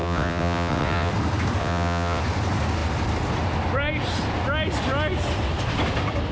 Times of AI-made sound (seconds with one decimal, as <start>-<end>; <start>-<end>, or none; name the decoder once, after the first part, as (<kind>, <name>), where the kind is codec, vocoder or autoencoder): 0.0-1.1 (vocoder, WaveNeXt); 1.6-2.2